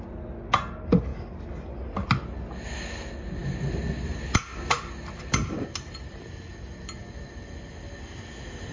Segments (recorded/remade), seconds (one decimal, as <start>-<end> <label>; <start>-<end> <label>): 0.0-8.7 recorded

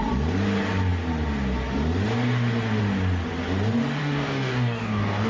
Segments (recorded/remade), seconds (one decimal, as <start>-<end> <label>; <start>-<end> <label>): 0.0-4.0 recorded; 4.0-5.3 remade

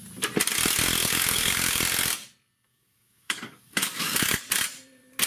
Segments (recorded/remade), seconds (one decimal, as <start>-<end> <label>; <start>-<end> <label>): 0.0-1.0 recorded; 1.0-1.8 remade; 1.8-2.7 recorded; 2.7-4.4 remade; 4.4-5.3 recorded

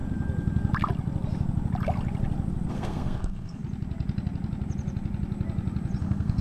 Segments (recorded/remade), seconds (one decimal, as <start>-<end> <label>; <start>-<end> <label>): 0.0-2.7 recorded; 2.7-3.6 remade; 3.6-6.0 recorded; 6.0-6.4 remade

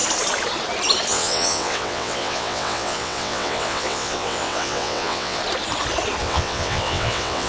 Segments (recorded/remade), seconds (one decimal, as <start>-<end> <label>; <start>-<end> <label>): 0.0-1.1 recorded; 1.1-5.4 remade; 5.4-6.2 recorded; 6.2-7.5 remade

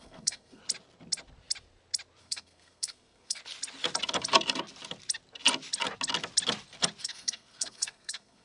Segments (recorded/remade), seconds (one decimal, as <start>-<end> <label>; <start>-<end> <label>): 0.0-0.6 remade; 0.6-2.2 recorded; 2.2-3.4 remade; 3.4-7.0 recorded; 7.0-8.4 remade

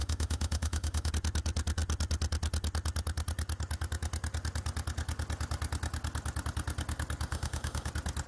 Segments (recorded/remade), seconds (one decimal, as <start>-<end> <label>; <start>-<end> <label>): 0.0-1.1 remade; 1.1-7.3 recorded; 7.3-7.9 remade; 7.9-8.3 recorded

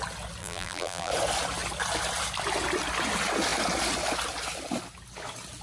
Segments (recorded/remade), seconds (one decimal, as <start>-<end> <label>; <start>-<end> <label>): 0.0-0.4 recorded; 0.4-1.1 remade; 1.1-5.6 recorded